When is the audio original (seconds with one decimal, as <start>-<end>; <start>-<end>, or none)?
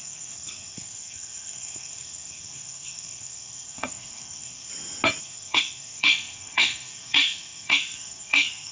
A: 4.7-5.2